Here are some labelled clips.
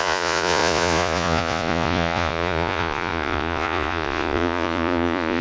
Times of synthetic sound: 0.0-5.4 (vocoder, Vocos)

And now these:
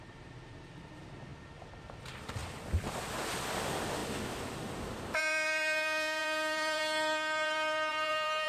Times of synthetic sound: 0.0-2.4 (vocoder, BigVGAN v2); 3.4-8.5